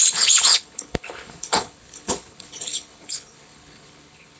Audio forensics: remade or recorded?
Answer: remade